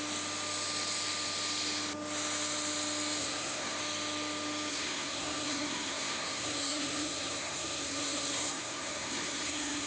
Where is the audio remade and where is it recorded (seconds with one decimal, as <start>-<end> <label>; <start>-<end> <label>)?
0.0-3.2 recorded; 3.2-3.8 remade; 3.8-4.7 recorded; 4.7-9.9 remade